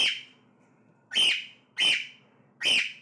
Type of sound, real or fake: real